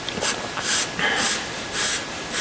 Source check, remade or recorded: recorded